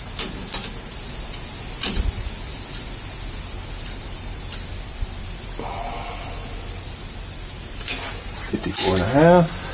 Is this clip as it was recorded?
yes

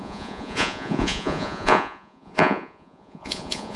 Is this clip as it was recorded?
no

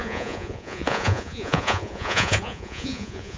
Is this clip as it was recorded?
no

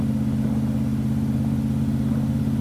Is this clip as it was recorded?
yes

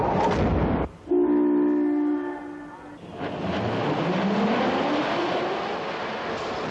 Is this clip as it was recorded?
yes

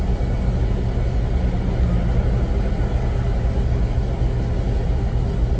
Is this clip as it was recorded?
yes